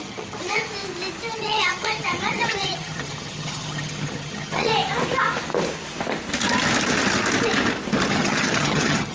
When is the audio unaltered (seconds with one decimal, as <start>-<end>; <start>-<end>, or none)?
0.7-1.3; 4.7-8.1